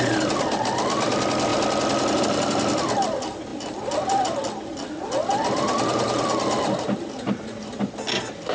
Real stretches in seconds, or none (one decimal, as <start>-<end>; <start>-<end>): 0.0-8.5

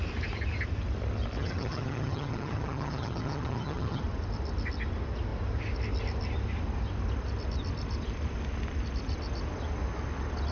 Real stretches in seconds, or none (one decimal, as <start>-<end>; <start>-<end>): 0.0-1.4; 4.0-10.5